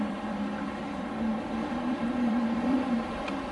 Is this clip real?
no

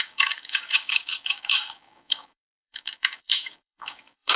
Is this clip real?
no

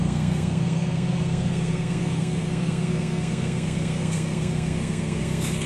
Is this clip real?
no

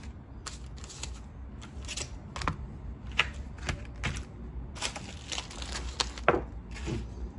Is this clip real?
yes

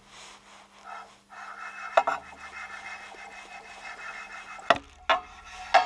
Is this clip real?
yes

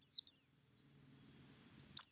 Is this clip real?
yes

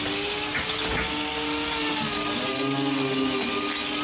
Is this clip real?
yes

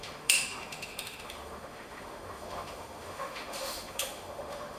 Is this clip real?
no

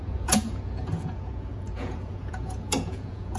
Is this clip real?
no